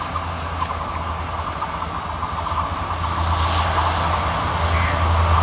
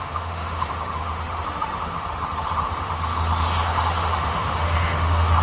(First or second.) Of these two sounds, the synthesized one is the second